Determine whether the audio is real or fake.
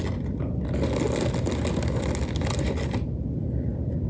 real